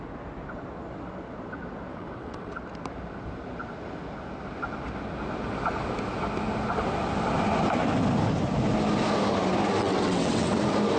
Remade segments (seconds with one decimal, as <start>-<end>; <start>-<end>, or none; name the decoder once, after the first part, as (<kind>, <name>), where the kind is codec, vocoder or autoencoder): 1.9-2.5 (vocoder, WaveNeXt); 9.8-10.6